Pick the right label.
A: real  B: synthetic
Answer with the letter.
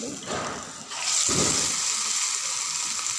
A